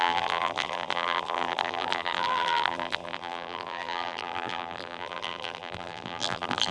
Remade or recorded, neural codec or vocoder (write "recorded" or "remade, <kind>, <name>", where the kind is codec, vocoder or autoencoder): remade, vocoder, BigVGAN v2